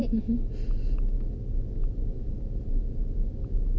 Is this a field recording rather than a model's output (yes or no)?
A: yes